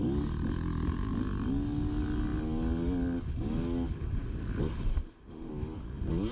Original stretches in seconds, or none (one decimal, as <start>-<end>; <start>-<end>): 0.0-4.9; 5.5-6.3